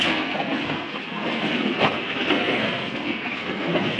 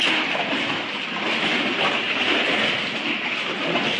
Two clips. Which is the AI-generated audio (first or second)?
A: first